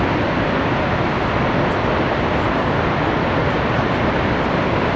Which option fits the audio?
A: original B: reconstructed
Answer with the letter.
A